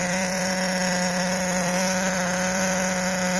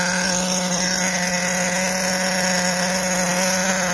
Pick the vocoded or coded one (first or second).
first